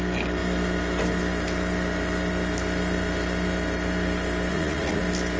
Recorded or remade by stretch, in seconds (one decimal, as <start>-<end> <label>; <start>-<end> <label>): 0.0-4.5 recorded; 4.5-5.0 remade; 5.0-5.4 recorded